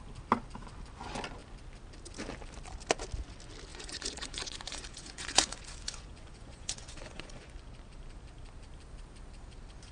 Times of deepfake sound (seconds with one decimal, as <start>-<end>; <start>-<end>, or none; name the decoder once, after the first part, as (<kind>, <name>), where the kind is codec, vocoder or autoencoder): 3.7-7.6 (vocoder, Vocos)